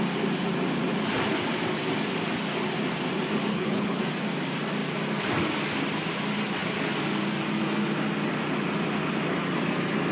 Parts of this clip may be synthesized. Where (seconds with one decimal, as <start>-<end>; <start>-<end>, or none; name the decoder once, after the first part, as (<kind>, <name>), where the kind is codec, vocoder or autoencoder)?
3.5-4.0 (codec, HILCodec)